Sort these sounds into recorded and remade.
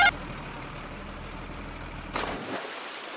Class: recorded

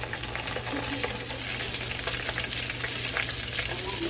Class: recorded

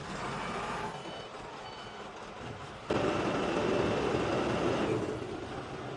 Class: recorded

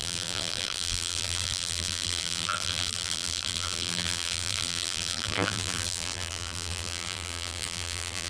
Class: remade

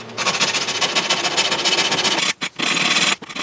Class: recorded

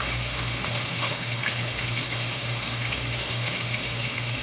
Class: remade